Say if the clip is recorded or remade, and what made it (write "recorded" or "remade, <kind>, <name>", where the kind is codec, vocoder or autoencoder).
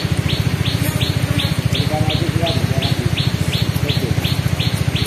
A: recorded